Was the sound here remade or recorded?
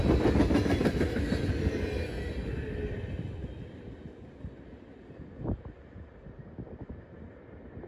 recorded